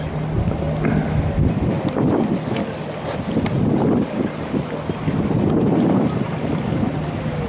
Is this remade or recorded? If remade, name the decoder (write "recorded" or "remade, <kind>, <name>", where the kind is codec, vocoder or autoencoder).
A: recorded